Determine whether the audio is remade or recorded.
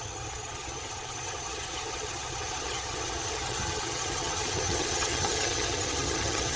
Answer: remade